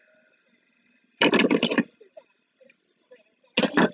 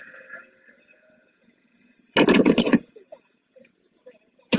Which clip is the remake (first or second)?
second